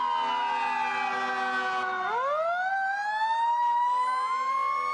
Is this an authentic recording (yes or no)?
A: yes